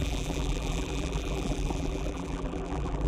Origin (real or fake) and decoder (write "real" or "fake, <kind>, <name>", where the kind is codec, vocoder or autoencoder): fake, vocoder, BigVGAN v2